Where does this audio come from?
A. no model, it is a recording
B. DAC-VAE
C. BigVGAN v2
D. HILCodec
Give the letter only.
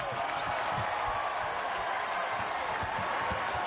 A